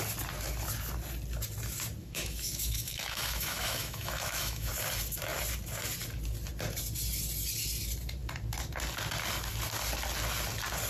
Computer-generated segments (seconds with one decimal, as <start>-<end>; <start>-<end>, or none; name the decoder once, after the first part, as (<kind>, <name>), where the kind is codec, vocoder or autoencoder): 2.0-4.7 (autoencoder, DAC-VAE)